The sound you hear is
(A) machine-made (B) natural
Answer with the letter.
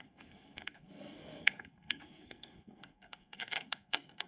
A